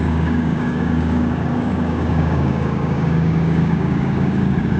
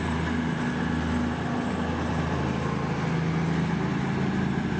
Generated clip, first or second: first